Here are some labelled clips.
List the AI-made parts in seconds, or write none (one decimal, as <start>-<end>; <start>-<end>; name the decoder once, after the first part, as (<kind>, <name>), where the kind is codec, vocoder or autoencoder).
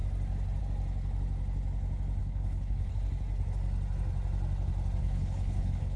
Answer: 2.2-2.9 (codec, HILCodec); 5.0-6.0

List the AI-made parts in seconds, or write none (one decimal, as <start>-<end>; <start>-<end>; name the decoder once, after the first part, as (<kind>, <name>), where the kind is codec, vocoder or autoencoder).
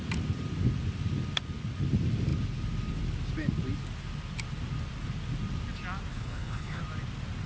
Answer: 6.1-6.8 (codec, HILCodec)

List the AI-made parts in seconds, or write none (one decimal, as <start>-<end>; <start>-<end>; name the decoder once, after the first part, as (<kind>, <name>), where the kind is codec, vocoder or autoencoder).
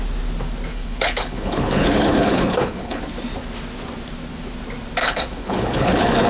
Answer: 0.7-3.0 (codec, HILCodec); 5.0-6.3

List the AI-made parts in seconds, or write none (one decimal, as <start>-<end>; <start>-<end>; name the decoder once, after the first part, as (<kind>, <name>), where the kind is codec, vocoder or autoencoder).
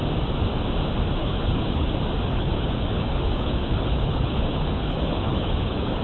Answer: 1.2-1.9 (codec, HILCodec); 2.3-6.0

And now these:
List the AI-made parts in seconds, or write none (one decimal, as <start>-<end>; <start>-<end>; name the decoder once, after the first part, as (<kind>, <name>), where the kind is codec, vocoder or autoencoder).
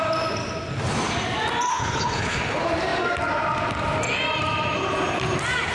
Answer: 1.7-2.4 (codec, HILCodec)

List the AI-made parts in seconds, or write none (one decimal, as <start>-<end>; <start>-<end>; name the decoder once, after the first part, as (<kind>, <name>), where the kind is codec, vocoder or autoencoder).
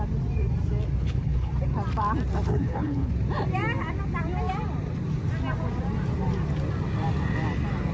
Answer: 1.0-1.5 (codec, HILCodec); 2.5-3.1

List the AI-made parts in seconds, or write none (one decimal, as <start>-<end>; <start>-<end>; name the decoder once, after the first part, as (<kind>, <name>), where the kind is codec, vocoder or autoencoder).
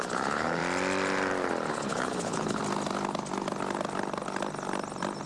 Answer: 0.0-0.6 (codec, HILCodec); 1.7-2.6